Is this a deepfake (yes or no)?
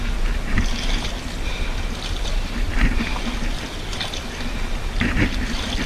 no